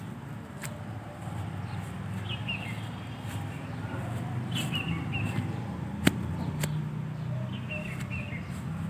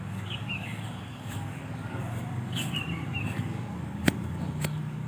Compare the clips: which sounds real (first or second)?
first